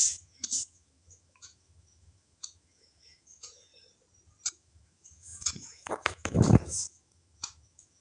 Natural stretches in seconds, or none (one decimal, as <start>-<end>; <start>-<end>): 3.7-4.5